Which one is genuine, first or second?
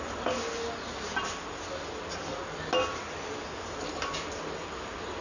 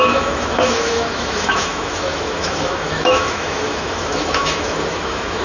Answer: first